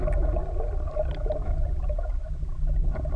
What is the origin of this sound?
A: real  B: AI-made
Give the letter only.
A